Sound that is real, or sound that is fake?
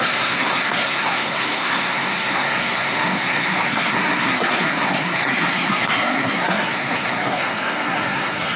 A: fake